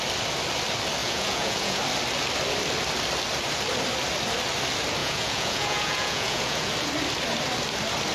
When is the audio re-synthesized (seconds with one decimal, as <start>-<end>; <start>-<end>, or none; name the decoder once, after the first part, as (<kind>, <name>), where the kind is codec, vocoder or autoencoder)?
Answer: 1.0-1.8 (vocoder, Vocos); 5.0-6.7